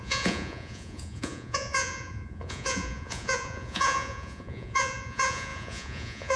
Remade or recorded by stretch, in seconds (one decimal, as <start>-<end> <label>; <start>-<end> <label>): 0.0-6.4 remade